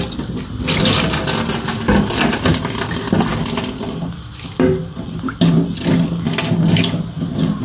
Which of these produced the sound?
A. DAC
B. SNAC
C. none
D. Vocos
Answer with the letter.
C